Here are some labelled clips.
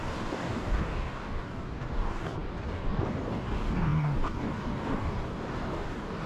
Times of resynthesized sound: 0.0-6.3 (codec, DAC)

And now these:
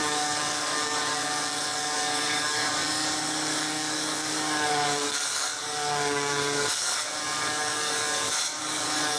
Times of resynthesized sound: 0.0-9.2 (codec, DAC)

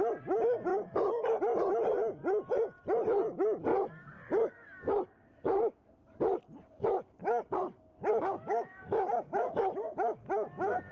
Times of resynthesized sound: 0.7-1.4 (codec, DAC); 3.7-4.9; 8.1-8.8